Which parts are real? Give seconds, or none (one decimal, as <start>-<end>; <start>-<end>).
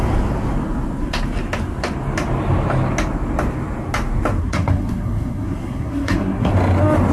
0.0-4.4; 6.5-7.1